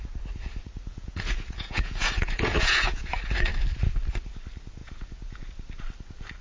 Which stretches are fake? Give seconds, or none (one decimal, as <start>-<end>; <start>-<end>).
0.9-3.1; 4.8-5.5